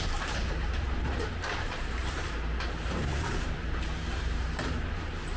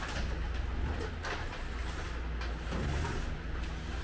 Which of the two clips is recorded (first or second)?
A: second